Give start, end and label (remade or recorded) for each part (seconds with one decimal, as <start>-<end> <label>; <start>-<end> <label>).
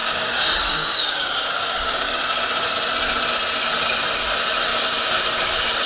0.0-2.2 remade; 2.2-5.9 recorded